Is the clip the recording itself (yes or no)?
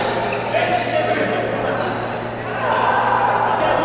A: yes